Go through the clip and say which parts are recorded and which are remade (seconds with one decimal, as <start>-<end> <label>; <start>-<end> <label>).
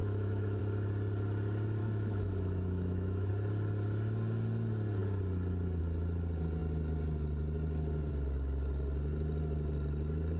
0.0-0.6 remade; 0.6-1.8 recorded; 1.8-3.3 remade; 3.3-10.4 recorded